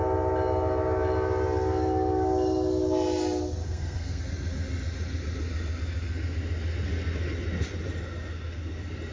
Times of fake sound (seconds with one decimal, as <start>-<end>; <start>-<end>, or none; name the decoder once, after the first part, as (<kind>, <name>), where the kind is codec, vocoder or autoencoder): 3.6-4.2 (codec, SNAC)